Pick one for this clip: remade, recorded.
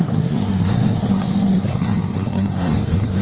remade